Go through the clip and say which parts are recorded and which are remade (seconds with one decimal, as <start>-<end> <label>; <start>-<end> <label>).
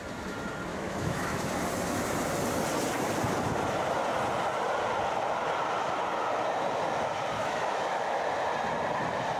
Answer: 0.0-0.7 recorded; 0.7-1.5 remade; 1.5-7.4 recorded; 7.4-8.2 remade; 8.2-9.4 recorded